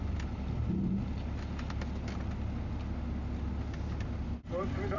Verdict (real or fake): real